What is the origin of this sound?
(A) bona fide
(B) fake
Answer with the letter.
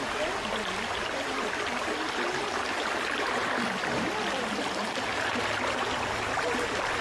A